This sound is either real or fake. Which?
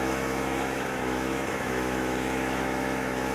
fake